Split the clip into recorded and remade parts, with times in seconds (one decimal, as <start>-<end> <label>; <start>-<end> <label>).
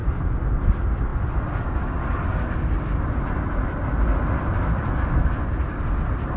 0.0-6.4 recorded